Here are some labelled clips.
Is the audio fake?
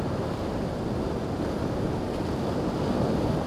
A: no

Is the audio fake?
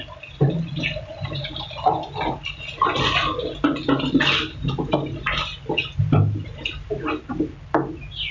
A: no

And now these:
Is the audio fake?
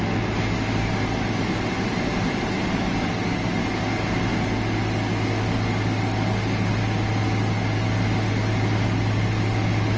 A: no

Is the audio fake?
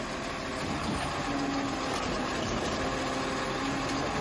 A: no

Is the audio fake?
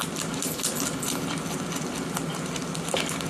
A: no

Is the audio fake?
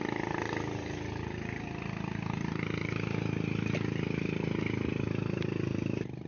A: no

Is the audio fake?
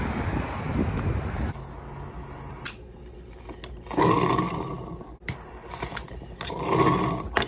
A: no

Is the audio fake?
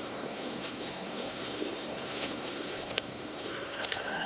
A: yes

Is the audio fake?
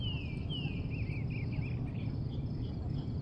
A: no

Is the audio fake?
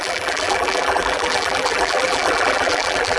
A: yes